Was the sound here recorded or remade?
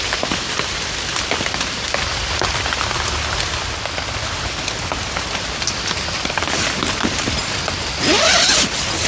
recorded